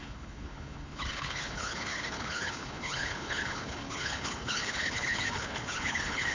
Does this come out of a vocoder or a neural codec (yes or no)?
yes